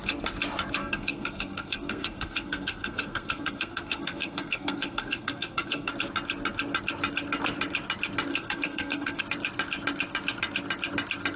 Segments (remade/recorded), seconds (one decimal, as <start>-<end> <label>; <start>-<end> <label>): 0.0-0.8 recorded; 0.8-5.9 remade; 5.9-8.3 recorded; 8.3-9.2 remade; 9.2-11.4 recorded